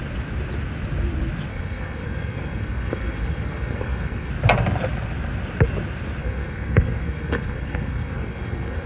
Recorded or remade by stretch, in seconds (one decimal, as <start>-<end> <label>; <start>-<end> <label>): 0.0-1.5 recorded; 1.5-4.3 remade; 4.3-6.2 recorded; 6.2-8.9 remade

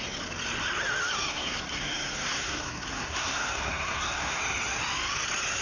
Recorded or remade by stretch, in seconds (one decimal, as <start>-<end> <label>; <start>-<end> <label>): 0.0-1.3 recorded; 1.3-4.4 remade; 4.4-5.6 recorded

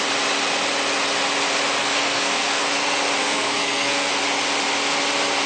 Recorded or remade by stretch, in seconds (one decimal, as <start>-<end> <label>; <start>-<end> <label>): 0.0-1.8 recorded; 1.8-2.6 remade; 2.6-3.2 recorded; 3.2-4.1 remade; 4.1-5.5 recorded

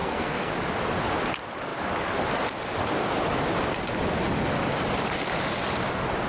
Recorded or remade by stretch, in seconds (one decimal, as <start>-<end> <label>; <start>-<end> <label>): 0.0-0.5 remade; 0.5-6.3 recorded

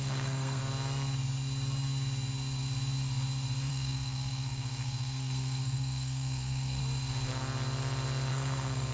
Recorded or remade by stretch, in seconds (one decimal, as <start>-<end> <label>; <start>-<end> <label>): 0.0-0.6 remade; 0.6-3.7 recorded; 3.7-6.8 remade; 6.8-8.3 recorded; 8.3-8.9 remade

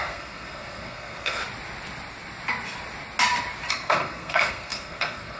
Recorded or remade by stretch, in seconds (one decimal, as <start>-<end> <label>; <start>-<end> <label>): 0.0-1.4 remade; 1.4-3.7 recorded; 3.7-5.4 remade